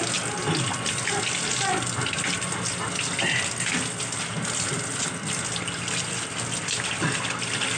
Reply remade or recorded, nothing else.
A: recorded